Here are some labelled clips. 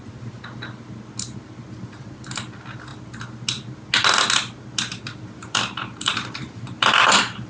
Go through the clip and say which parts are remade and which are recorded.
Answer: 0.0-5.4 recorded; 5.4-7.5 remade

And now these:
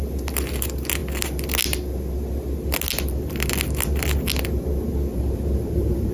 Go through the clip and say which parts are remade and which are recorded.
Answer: 0.0-5.1 recorded; 5.1-6.1 remade